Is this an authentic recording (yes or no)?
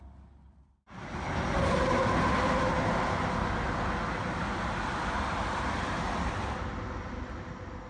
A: yes